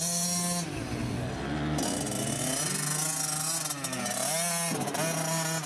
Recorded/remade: recorded